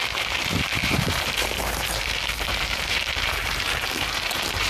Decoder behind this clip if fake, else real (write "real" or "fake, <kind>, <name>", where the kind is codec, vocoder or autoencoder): fake, vocoder, BigVGAN v2